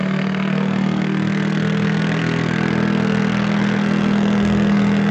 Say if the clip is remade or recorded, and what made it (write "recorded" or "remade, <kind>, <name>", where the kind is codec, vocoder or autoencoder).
remade, codec, SNAC